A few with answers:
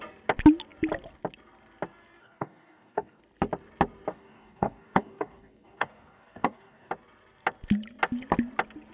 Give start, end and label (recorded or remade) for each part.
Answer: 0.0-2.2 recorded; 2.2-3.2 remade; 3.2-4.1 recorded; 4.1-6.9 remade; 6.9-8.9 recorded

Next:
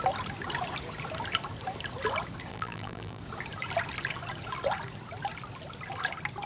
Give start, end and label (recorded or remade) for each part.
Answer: 0.0-2.5 recorded; 2.5-3.2 remade; 3.2-6.5 recorded

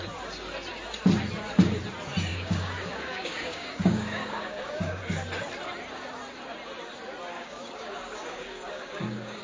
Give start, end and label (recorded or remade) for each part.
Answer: 0.0-2.3 recorded; 2.3-5.0 remade; 5.0-7.3 recorded; 7.3-9.4 remade

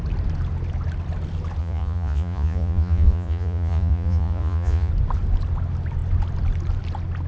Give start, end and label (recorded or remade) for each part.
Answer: 0.0-1.6 recorded; 1.6-4.9 remade; 4.9-7.3 recorded

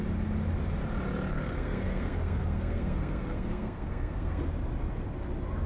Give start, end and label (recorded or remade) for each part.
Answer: 0.0-1.3 recorded; 1.3-4.4 remade; 4.4-5.7 recorded

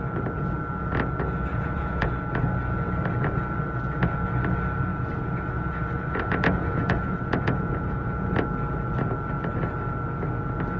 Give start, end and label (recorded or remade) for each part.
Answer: 0.0-1.5 recorded; 1.5-2.1 remade; 2.1-4.9 recorded; 4.9-8.3 remade; 8.3-10.8 recorded

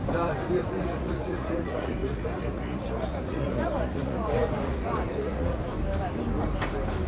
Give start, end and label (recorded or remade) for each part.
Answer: 0.0-0.7 recorded; 0.7-5.6 remade; 5.6-7.1 recorded